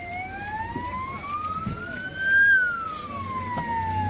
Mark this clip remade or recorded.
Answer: recorded